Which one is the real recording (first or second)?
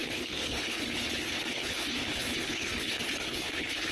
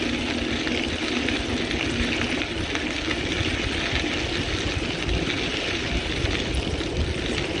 second